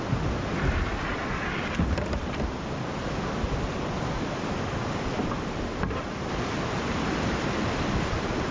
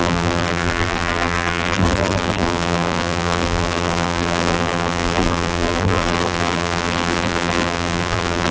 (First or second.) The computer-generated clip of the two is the second